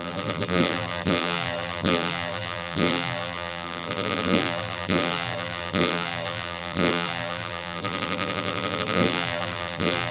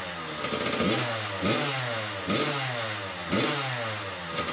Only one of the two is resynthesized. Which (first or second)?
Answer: first